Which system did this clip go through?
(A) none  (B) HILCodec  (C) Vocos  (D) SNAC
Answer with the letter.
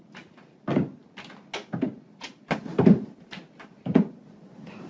A